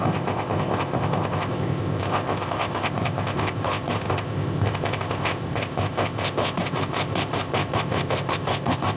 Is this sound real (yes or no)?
no